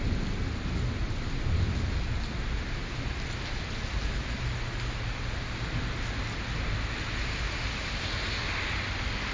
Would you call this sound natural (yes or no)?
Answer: yes